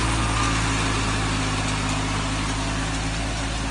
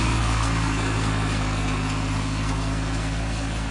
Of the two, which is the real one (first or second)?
first